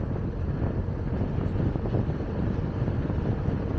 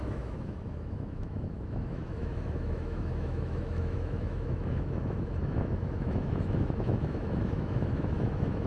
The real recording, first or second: first